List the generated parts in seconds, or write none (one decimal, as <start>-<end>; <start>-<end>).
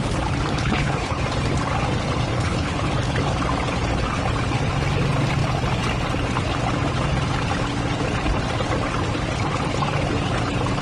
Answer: 0.5-1.2; 2.3-2.9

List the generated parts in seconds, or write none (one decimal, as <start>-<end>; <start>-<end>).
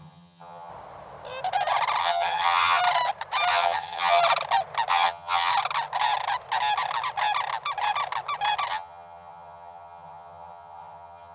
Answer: 0.0-0.7; 2.0-2.8; 3.5-4.2; 4.9-5.5; 8.7-11.3